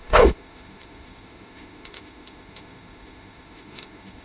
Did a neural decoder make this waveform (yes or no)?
yes